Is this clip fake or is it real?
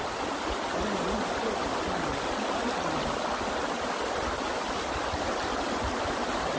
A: real